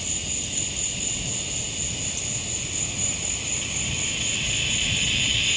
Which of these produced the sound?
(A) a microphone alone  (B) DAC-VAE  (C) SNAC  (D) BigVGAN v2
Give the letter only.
D